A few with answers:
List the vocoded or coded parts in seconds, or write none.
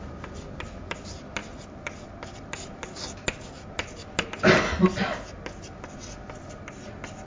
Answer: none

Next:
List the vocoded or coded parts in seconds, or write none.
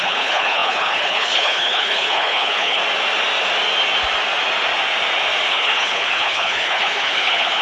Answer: 0.0-2.8; 5.5-7.6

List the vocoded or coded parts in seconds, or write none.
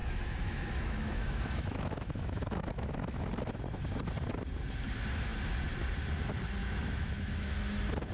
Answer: 0.0-3.3; 6.6-7.5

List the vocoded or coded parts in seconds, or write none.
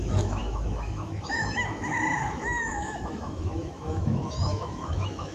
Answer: 0.0-5.3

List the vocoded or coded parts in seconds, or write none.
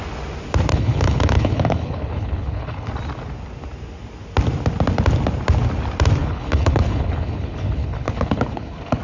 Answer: 0.7-2.9; 6.2-9.0